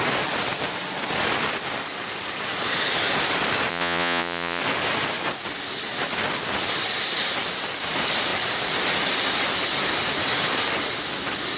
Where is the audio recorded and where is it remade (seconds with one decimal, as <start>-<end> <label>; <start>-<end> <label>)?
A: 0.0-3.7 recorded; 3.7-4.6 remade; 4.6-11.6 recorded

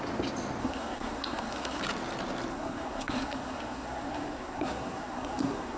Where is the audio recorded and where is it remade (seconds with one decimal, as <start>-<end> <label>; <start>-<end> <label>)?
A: 0.0-0.6 recorded; 0.6-1.8 remade; 1.8-2.5 recorded; 2.5-5.8 remade

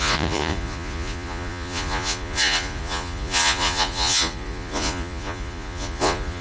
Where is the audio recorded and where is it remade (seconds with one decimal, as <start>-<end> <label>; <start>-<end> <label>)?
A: 0.0-6.4 remade